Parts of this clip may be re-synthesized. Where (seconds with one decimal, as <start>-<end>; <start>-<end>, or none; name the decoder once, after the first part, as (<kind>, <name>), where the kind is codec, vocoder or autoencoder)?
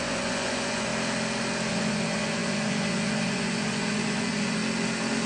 0.0-0.9 (vocoder, Vocos); 1.7-4.6